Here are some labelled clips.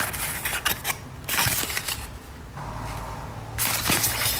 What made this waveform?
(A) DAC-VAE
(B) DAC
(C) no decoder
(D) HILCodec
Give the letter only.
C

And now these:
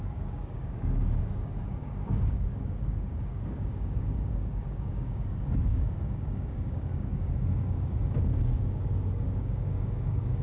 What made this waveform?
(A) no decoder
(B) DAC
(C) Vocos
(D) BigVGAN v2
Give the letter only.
B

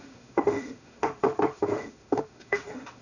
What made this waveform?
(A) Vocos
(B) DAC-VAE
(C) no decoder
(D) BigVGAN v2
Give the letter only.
B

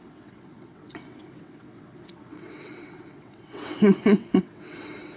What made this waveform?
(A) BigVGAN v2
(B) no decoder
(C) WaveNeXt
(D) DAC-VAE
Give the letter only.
C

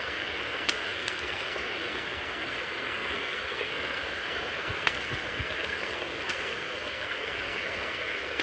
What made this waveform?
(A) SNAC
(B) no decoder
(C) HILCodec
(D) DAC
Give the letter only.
A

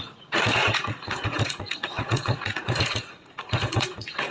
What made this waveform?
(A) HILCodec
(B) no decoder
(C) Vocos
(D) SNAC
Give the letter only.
C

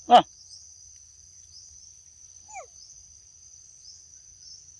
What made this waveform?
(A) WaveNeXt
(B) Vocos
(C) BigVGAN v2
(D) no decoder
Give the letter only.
D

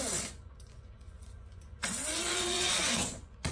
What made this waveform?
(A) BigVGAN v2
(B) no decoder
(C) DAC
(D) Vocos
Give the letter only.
D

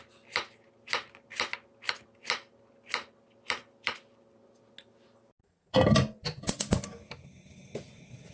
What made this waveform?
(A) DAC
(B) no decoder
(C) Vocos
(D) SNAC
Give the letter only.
B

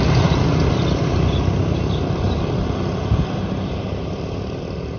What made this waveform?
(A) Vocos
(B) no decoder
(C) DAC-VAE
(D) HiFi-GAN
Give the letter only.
B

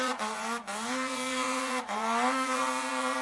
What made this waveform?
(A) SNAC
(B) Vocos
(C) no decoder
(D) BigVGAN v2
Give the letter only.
B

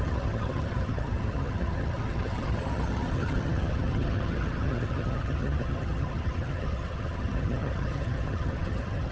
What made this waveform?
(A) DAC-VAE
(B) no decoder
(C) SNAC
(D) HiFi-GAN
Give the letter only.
D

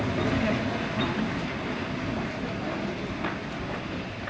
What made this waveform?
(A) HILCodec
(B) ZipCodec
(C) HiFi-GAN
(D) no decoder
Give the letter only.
D